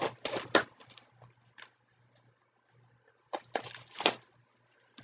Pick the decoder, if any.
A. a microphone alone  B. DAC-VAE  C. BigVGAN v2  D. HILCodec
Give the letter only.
A